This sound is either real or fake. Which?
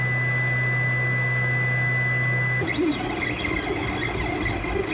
real